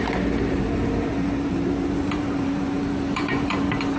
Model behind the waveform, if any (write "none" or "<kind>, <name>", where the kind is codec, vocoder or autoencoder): vocoder, BigVGAN v2